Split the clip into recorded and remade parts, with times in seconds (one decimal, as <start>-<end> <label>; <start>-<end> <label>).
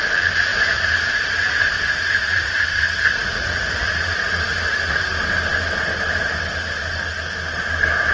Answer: 0.0-0.5 recorded; 0.5-5.1 remade; 5.1-8.1 recorded